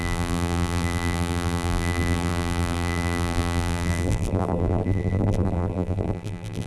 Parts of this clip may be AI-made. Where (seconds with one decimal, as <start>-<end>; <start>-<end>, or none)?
0.0-6.7

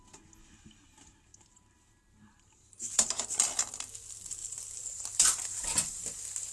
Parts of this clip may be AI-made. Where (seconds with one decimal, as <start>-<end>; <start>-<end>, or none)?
1.3-2.9; 4.4-6.0

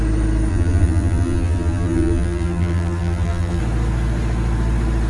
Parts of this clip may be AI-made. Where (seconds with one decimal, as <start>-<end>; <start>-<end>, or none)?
0.5-3.6

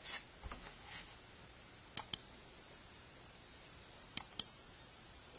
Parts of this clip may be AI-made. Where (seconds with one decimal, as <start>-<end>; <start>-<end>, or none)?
2.0-5.4

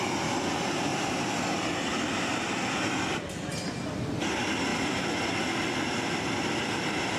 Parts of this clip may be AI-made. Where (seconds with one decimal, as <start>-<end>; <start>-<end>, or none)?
0.9-3.5; 4.7-7.2